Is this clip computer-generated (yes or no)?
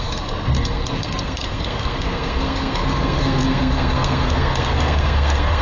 yes